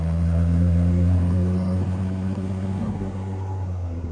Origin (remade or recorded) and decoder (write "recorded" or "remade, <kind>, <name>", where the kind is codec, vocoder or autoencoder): remade, codec, SNAC